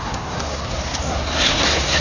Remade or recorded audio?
remade